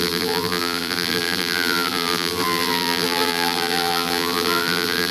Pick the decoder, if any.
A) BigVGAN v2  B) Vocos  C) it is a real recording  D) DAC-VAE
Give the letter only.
A